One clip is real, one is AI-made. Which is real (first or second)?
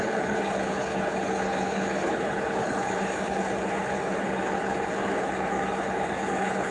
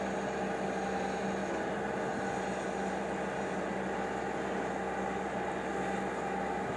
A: second